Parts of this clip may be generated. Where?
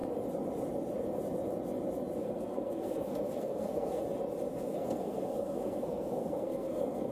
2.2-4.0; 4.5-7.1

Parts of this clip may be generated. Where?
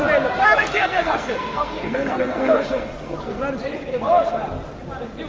0.4-3.4; 3.9-4.4